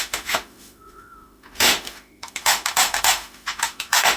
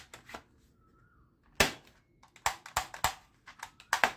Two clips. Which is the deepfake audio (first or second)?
first